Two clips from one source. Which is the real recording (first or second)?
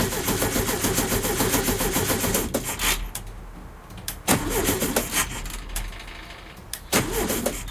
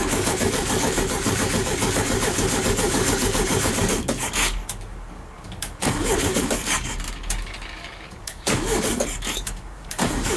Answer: first